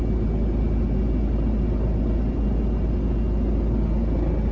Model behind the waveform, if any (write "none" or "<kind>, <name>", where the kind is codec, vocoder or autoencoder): none